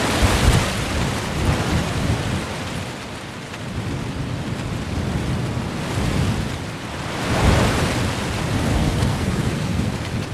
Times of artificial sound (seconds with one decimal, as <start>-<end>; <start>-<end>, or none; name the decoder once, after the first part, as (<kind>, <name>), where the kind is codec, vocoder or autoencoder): 8.7-9.9 (codec, SNAC)